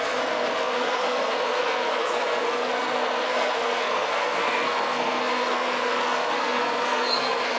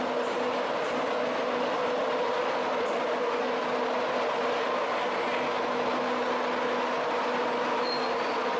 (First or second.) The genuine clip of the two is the second